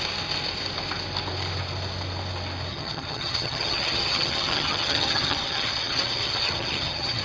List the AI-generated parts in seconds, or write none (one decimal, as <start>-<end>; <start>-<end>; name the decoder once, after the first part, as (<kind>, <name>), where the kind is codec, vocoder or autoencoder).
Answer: 2.7-7.2 (vocoder, HiFi-GAN)